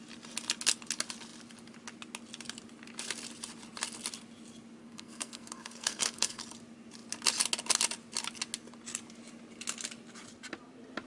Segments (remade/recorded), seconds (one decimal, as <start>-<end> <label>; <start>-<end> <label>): 0.0-4.8 recorded; 4.8-6.4 remade; 6.4-11.1 recorded